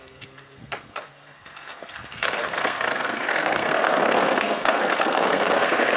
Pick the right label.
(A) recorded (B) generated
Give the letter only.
B